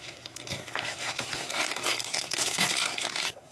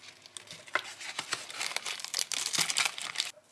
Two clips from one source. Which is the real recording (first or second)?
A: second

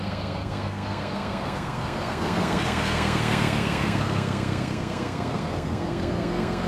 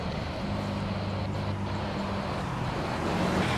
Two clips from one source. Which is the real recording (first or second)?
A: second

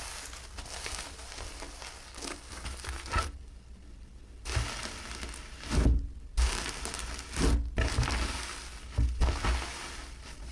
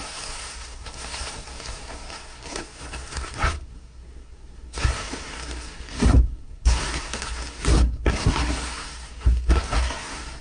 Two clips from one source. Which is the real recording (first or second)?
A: first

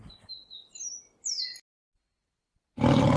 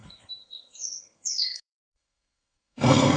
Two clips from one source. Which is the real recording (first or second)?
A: first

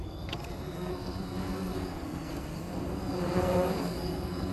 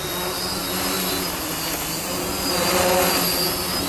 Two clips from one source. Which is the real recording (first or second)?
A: second